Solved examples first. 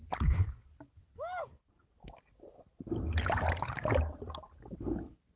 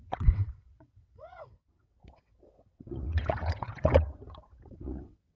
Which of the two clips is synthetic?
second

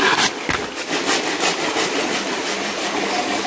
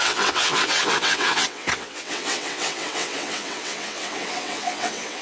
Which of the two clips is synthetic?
second